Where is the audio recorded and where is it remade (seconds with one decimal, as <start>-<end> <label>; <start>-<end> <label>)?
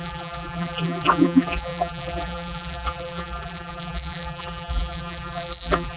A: 0.0-6.0 remade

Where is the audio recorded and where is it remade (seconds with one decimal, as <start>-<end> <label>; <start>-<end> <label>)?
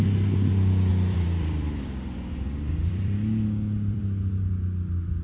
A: 0.0-0.9 recorded; 0.9-4.0 remade; 4.0-5.2 recorded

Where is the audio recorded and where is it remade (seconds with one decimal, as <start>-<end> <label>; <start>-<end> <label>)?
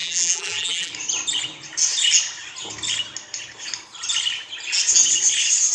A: 0.0-0.9 remade; 0.9-5.7 recorded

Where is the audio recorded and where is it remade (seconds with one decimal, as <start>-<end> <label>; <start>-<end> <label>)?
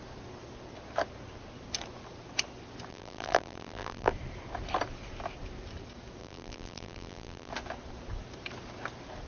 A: 0.0-2.9 recorded; 2.9-4.1 remade; 4.1-6.2 recorded; 6.2-7.5 remade; 7.5-9.3 recorded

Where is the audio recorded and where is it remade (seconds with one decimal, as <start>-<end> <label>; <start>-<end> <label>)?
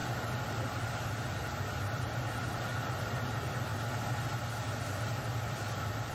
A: 0.0-3.7 remade; 3.7-4.8 recorded; 4.8-6.1 remade